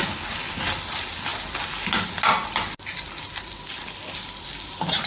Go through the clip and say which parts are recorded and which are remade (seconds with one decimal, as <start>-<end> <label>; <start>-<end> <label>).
0.0-5.1 recorded